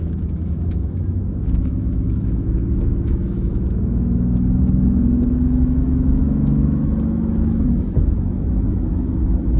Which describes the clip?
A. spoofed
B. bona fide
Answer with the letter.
A